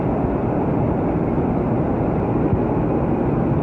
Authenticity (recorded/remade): recorded